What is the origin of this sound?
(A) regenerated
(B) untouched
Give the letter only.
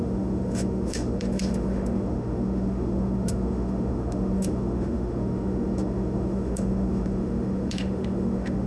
A